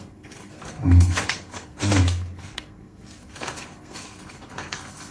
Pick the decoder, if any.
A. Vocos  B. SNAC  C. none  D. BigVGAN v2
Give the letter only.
B